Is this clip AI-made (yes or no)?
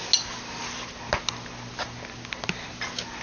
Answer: no